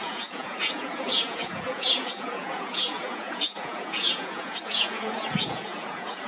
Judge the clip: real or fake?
fake